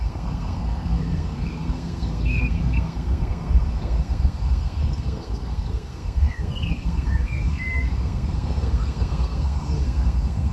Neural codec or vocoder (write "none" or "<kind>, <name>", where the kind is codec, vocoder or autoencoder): codec, SNAC